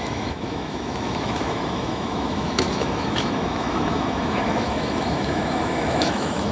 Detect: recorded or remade remade